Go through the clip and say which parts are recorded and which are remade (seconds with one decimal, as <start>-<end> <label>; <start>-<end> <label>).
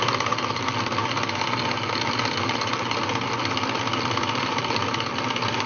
0.0-5.7 recorded